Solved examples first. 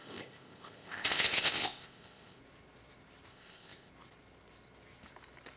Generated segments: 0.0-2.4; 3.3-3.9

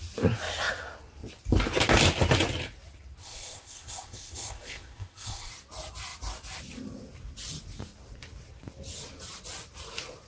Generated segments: 3.2-5.5

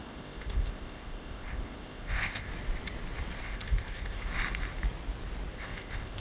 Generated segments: 0.0-2.5; 3.4-4.3; 5.5-6.2